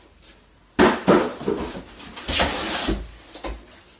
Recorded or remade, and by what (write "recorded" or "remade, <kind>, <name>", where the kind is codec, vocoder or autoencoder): recorded